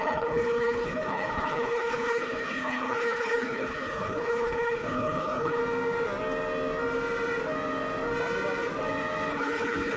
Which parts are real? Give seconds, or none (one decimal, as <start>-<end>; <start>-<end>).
5.6-9.3

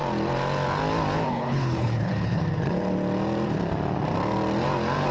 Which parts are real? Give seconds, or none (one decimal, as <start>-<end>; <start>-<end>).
0.0-1.3; 2.4-5.1